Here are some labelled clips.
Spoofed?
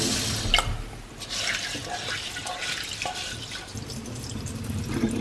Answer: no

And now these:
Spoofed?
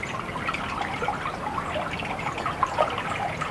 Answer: no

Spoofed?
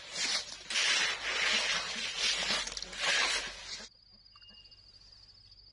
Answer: no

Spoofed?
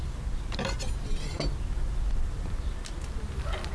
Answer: no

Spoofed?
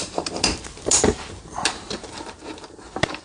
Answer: yes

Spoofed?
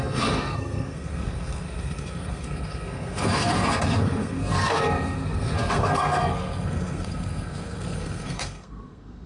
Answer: yes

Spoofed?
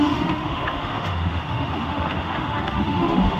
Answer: yes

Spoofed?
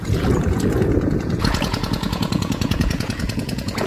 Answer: yes